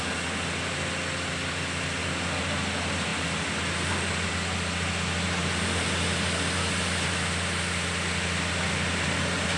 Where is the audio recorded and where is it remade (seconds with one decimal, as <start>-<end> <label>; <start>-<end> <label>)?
0.0-9.6 recorded